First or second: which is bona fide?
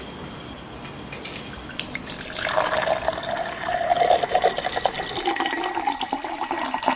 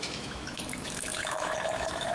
first